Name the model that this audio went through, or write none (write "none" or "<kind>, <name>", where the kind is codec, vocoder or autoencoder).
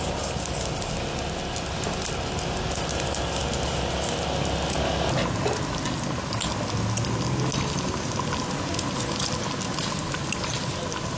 none